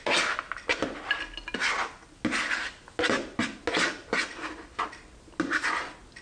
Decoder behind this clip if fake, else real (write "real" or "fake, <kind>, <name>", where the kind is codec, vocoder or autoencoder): real